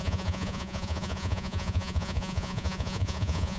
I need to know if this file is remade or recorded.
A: remade